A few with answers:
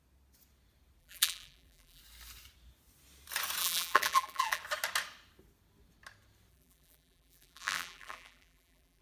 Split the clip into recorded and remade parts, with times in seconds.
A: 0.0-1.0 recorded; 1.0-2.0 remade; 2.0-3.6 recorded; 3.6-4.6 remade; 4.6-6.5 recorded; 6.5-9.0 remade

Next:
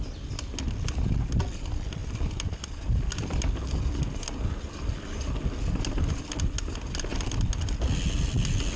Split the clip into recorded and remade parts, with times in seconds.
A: 0.0-2.0 recorded; 2.0-3.1 remade; 3.1-8.8 recorded

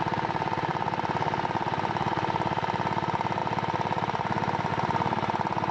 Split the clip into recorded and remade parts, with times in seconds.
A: 0.0-5.7 remade

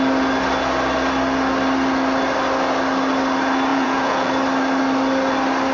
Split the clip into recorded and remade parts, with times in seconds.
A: 0.0-3.7 recorded; 3.7-4.3 remade; 4.3-5.7 recorded

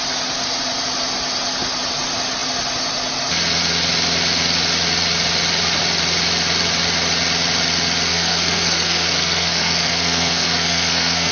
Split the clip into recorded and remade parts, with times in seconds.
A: 0.0-8.1 recorded; 8.1-11.3 remade

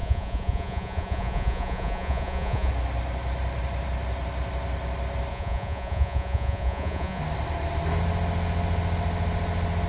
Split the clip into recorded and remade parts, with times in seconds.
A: 0.0-2.7 remade; 2.7-5.3 recorded; 5.3-7.2 remade; 7.2-9.9 recorded